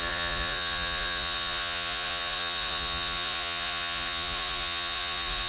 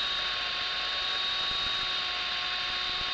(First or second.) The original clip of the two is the second